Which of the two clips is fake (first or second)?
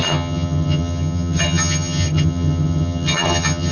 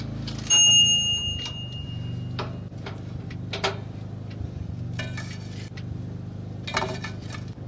first